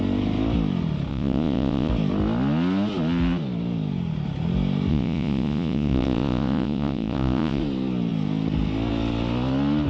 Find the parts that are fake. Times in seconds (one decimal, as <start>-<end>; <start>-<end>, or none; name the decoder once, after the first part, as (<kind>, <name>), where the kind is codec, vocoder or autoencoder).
1.1-1.9 (vocoder, Vocos); 4.9-7.6